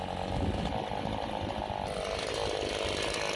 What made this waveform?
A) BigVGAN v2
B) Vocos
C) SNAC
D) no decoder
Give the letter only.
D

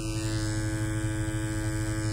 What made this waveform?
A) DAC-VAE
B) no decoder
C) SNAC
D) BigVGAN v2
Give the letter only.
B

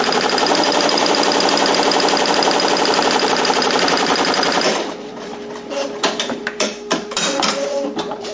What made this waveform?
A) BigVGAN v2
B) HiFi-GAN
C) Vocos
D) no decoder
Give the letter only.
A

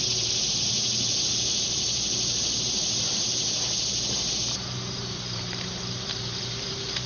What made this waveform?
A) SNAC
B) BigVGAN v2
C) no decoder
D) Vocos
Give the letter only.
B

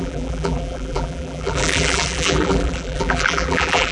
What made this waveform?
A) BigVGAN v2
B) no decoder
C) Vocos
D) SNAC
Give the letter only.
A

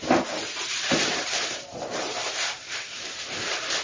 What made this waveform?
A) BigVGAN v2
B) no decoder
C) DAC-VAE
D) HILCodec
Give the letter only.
A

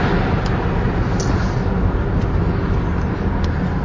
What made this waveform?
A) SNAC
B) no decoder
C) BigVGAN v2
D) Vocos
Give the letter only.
B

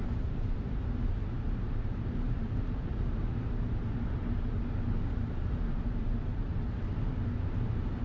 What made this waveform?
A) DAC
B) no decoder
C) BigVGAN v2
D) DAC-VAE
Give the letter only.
C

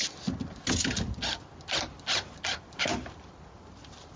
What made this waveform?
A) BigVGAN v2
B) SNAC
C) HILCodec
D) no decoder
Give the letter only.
D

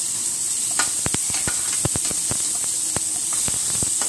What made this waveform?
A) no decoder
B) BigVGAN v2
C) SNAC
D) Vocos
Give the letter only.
B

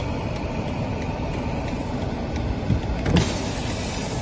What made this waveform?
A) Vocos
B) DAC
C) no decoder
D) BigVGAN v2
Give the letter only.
C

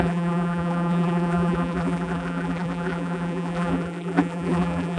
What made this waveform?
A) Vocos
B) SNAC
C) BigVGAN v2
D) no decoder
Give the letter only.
C